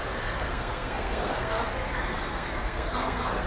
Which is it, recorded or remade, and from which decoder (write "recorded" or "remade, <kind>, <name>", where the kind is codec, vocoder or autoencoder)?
remade, codec, SNAC